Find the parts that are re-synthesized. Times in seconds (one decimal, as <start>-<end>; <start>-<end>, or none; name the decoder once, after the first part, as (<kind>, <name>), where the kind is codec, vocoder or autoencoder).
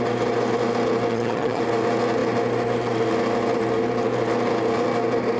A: 1.1-1.6 (vocoder, HiFi-GAN)